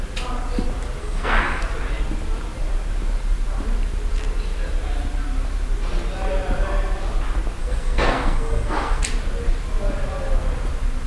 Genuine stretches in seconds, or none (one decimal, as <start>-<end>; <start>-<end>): 0.0-1.0; 1.6-7.6; 9.0-11.1